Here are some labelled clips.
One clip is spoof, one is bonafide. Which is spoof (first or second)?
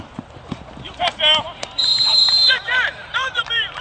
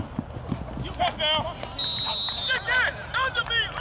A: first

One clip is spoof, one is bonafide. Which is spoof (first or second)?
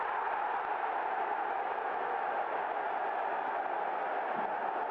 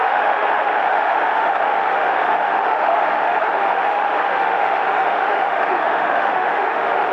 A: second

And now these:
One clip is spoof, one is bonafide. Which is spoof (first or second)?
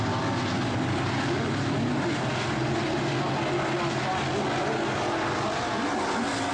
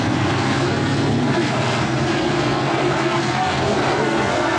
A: second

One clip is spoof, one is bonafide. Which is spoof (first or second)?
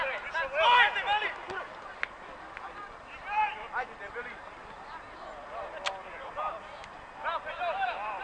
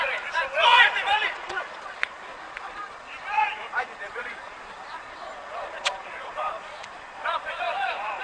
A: second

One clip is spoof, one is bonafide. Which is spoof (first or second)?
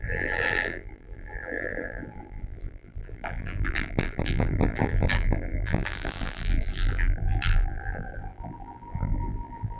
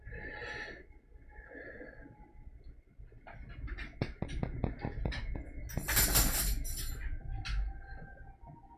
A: first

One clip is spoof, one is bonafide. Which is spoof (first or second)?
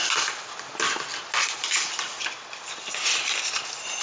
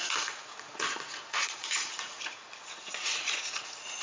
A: second